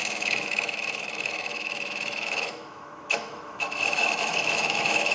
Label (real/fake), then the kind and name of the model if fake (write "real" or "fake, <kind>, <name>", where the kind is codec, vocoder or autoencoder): fake, autoencoder, DAC-VAE